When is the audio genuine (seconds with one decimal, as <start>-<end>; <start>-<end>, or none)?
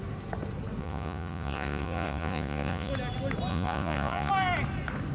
0.0-0.8; 2.9-3.5; 4.3-5.1